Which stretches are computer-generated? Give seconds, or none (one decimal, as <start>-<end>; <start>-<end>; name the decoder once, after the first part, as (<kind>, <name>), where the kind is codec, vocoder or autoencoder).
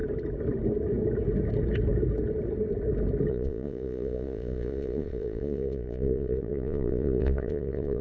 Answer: 3.3-8.0 (vocoder, Vocos)